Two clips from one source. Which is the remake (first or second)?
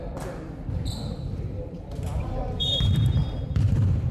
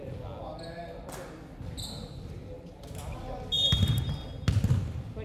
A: first